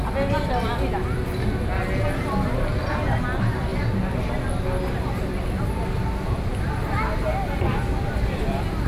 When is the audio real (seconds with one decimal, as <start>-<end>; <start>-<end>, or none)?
0.0-8.9